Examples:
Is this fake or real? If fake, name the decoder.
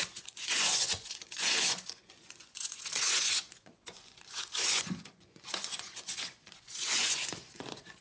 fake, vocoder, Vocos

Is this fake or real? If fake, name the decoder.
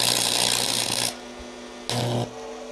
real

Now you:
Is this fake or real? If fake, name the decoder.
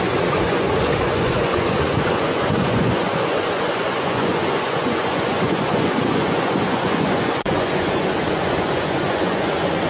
fake, vocoder, Vocos